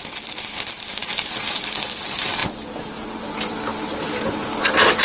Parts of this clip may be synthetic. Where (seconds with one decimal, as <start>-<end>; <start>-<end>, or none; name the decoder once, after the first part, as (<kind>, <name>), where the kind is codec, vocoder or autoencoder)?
none